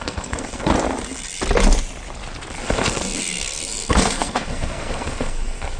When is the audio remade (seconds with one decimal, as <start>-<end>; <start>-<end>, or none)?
0.0-0.7; 2.6-5.8

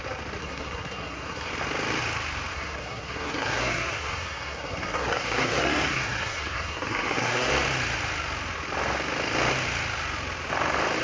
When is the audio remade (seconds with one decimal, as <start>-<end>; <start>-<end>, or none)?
0.4-1.5; 2.5-7.5

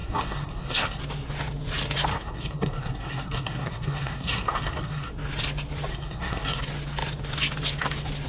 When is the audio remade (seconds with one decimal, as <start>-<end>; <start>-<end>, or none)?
0.0-1.0; 2.1-5.1; 5.9-6.6